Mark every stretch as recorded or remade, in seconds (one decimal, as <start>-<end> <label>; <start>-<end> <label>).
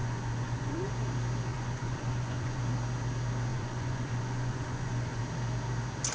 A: 0.0-0.9 remade; 0.9-1.5 recorded; 1.5-2.6 remade; 2.6-3.5 recorded; 3.5-5.2 remade; 5.2-6.1 recorded